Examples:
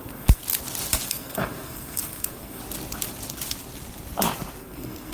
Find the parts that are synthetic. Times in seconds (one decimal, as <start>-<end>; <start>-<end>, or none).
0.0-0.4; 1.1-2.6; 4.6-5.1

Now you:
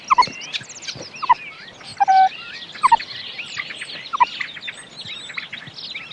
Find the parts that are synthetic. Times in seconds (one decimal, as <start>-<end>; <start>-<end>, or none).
none

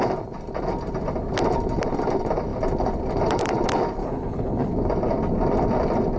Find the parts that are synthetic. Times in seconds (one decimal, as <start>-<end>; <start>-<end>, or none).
4.0-4.7